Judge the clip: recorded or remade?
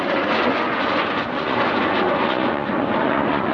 remade